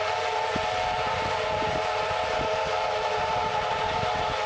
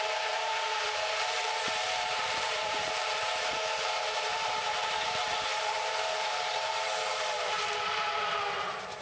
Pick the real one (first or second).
first